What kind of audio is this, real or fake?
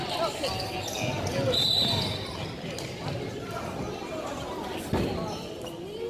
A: real